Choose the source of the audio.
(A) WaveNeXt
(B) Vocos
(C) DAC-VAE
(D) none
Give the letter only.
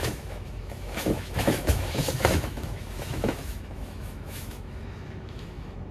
C